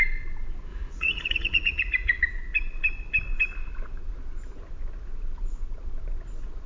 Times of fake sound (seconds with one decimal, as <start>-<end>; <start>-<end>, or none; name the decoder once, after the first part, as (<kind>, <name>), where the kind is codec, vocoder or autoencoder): 0.7-2.2 (vocoder, Vocos)